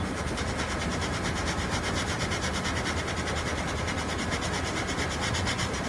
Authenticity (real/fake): real